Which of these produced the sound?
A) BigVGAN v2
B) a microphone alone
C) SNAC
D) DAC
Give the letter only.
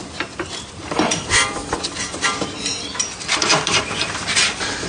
A